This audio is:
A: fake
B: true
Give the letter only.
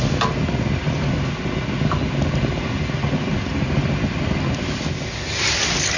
B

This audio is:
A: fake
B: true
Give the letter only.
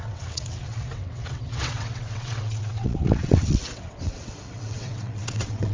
A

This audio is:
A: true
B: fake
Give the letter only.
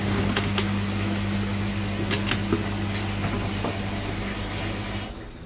A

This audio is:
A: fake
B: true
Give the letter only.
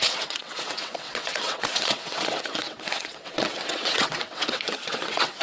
A